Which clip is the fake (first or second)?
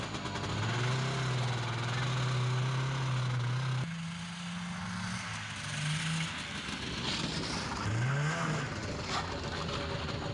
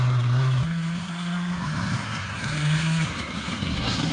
second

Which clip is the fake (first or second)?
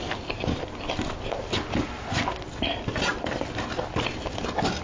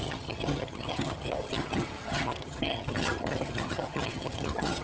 second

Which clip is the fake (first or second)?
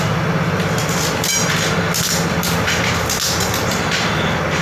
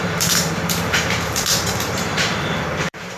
second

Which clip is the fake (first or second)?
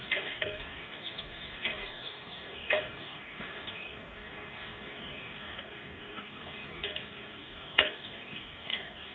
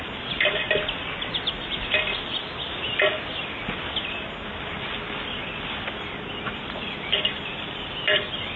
first